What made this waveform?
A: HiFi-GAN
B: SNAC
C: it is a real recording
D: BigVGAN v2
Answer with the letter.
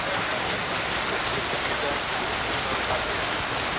C